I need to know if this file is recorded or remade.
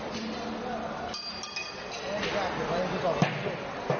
recorded